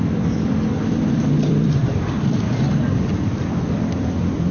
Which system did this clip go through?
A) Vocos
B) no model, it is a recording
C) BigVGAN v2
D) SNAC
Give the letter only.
C